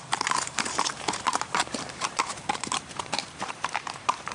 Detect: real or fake fake